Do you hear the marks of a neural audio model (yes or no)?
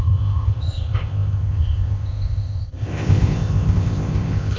yes